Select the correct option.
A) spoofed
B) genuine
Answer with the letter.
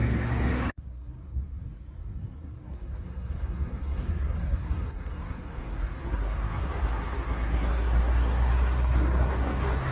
A